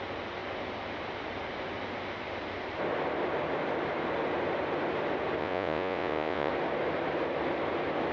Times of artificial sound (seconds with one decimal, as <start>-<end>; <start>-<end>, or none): 5.4-6.5